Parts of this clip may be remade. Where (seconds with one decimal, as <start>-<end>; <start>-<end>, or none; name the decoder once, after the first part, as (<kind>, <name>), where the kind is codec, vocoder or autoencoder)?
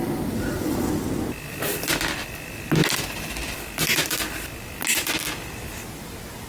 none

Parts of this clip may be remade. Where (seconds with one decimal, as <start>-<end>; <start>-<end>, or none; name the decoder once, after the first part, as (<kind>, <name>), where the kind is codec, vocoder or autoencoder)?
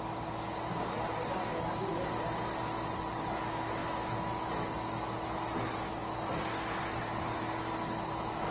3.8-4.5 (autoencoder, DAC-VAE)